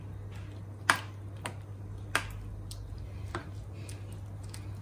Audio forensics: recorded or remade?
recorded